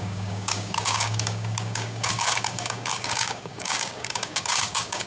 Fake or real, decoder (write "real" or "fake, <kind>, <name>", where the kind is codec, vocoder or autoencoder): fake, codec, DAC